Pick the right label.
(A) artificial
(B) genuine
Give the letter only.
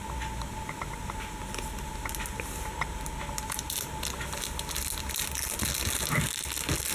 B